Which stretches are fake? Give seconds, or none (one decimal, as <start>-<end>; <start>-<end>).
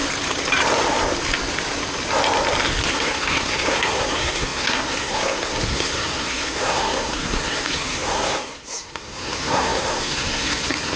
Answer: 2.9-11.0